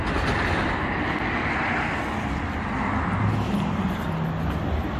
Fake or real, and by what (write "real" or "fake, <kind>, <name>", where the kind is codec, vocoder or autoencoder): real